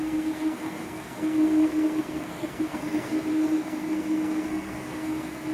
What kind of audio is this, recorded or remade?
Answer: remade